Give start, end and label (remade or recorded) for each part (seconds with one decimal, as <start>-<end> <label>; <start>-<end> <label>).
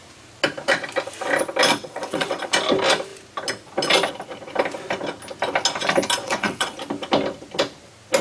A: 0.0-1.8 recorded; 1.8-2.4 remade; 2.4-6.2 recorded; 6.2-6.7 remade; 6.7-8.2 recorded